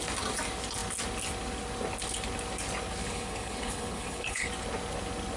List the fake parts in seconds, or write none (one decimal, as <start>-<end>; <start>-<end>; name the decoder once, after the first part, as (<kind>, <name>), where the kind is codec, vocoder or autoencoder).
3.0-4.5 (codec, HILCodec)